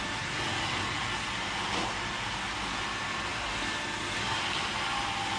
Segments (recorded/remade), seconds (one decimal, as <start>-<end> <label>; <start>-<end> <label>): 0.0-5.4 recorded